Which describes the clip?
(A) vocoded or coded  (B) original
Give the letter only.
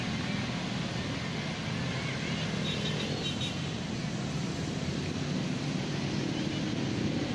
B